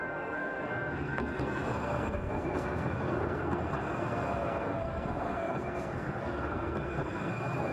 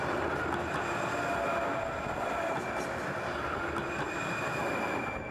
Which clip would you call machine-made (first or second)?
first